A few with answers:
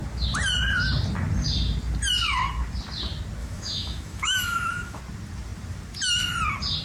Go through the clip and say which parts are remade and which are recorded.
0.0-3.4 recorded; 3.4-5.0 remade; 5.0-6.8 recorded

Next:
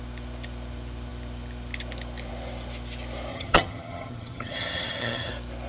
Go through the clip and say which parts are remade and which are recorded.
0.0-3.3 recorded; 3.3-5.3 remade; 5.3-5.7 recorded

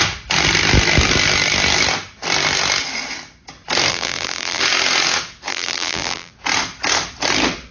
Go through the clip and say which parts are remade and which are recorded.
0.0-3.9 recorded; 3.9-4.6 remade; 4.6-5.5 recorded; 5.5-6.3 remade; 6.3-7.7 recorded